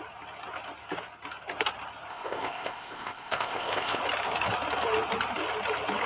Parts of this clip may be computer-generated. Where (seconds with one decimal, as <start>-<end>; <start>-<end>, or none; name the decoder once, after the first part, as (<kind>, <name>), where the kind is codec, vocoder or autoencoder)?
2.1-4.0 (codec, ZipCodec)